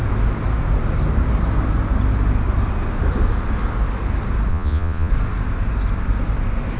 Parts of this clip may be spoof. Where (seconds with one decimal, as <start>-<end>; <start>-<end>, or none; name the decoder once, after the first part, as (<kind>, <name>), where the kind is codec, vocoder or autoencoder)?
4.5-5.1 (vocoder, Vocos)